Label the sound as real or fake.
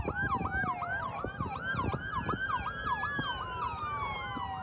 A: real